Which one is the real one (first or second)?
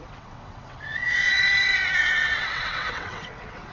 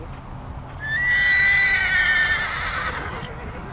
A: second